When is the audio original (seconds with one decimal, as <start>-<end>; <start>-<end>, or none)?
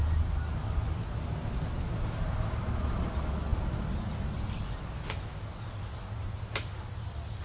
0.0-7.4